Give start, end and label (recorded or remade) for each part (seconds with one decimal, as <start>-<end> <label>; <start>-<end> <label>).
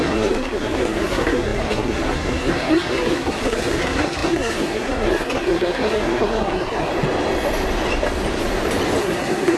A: 0.0-6.9 remade; 6.9-9.0 recorded; 9.0-9.6 remade